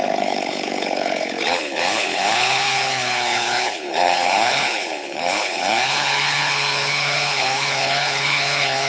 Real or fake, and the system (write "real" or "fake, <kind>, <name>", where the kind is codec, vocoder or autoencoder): fake, codec, HILCodec